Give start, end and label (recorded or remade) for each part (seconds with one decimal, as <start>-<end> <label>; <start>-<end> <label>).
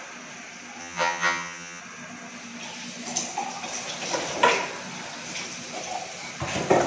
0.0-0.8 recorded; 0.8-1.8 remade; 1.8-6.9 recorded